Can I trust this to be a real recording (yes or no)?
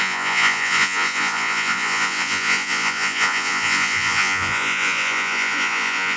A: no